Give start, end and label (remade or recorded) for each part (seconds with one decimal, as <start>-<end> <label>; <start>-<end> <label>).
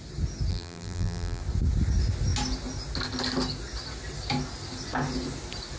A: 0.0-0.5 recorded; 0.5-1.4 remade; 1.4-5.8 recorded